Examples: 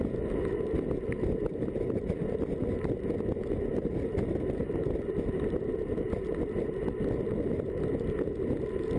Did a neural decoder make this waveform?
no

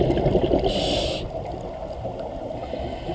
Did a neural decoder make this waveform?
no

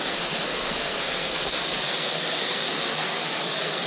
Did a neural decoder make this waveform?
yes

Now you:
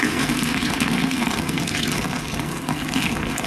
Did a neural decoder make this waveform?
yes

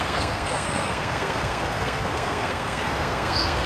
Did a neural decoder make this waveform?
yes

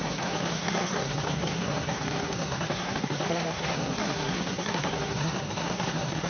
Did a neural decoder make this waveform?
yes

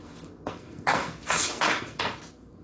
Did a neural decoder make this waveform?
yes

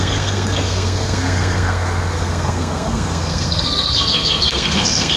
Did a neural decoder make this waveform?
yes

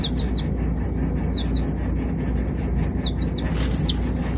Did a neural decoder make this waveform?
no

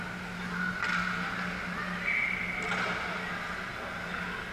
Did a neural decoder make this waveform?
no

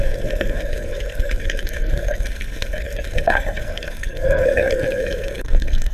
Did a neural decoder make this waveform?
yes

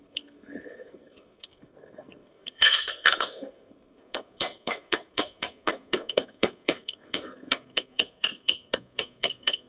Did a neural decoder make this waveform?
yes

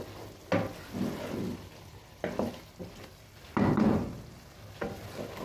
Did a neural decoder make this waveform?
no